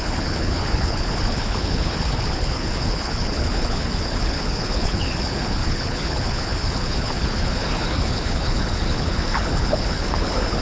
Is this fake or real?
fake